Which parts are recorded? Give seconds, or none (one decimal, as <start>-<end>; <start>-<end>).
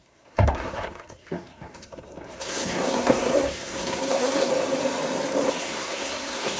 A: 4.5-5.6